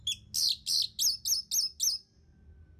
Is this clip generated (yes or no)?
no